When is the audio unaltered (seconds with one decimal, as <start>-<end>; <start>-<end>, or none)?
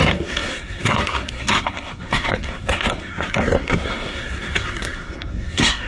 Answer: none